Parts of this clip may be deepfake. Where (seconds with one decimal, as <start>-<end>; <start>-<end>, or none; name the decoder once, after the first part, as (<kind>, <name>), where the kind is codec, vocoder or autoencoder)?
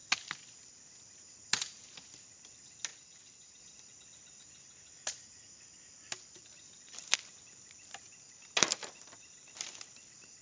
none